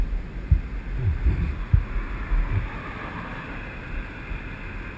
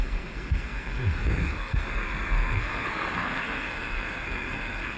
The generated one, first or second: second